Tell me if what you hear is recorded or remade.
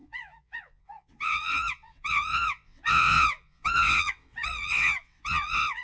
remade